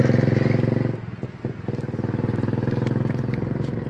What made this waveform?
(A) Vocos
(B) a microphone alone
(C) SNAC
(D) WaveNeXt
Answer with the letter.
B